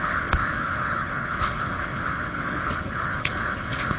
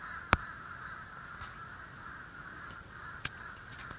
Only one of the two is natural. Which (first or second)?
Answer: second